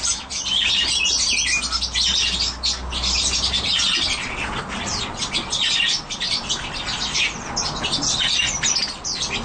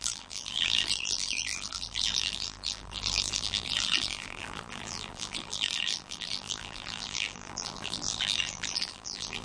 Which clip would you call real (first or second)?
first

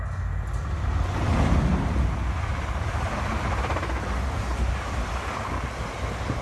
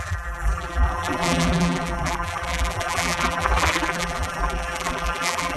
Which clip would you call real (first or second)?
first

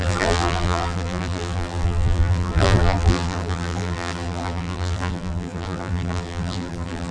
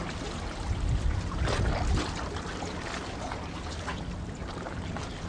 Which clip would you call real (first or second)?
second